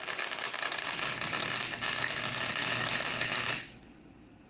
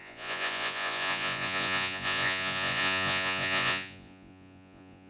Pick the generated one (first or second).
second